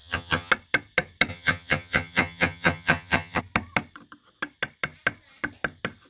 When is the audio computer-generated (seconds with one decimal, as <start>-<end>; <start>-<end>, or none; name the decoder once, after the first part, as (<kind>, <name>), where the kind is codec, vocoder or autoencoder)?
0.0-0.5 (vocoder, HiFi-GAN); 1.3-3.4